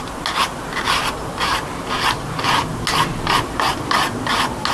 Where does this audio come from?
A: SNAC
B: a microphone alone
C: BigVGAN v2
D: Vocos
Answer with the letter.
B